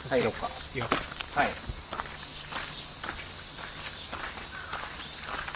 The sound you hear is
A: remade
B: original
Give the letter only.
B